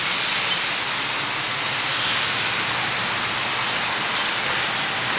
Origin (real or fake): real